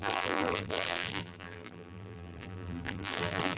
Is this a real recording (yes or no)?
no